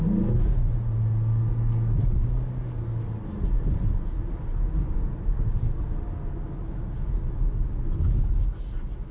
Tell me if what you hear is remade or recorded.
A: recorded